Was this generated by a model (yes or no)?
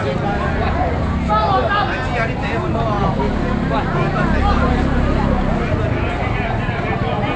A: no